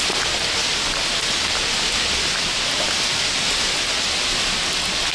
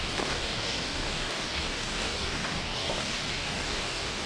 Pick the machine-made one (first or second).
second